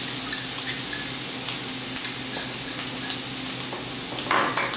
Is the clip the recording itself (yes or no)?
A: yes